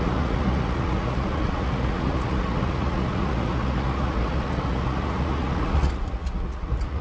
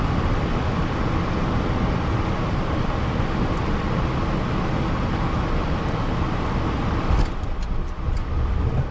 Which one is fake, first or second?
first